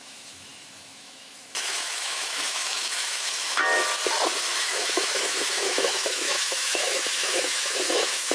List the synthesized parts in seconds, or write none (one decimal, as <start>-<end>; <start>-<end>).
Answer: 0.0-3.6; 4.6-8.3